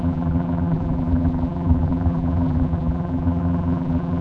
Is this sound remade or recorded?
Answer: remade